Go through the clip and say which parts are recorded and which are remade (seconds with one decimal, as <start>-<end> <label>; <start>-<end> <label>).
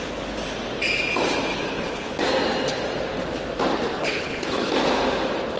0.0-1.5 recorded; 1.5-2.2 remade; 2.2-3.9 recorded; 3.9-4.7 remade; 4.7-5.6 recorded